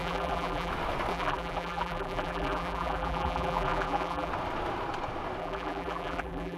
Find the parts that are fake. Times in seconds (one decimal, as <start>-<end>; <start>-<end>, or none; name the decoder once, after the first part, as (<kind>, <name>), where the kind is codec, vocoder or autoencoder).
0.0-0.7 (vocoder, BigVGAN v2); 1.1-4.3; 5.4-6.6